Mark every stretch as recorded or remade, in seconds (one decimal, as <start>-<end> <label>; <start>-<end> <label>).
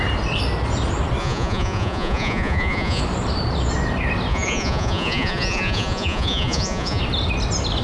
0.0-1.2 recorded; 1.2-3.0 remade; 3.0-4.3 recorded; 4.3-7.0 remade; 7.0-7.8 recorded